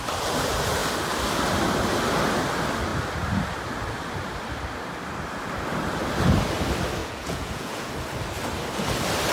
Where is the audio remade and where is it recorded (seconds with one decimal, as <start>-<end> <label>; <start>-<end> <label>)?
0.0-7.0 recorded; 7.0-7.9 remade; 7.9-9.3 recorded